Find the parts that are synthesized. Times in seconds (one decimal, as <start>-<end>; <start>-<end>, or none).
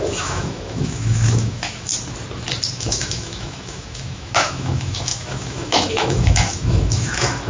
0.0-1.9; 2.7-7.5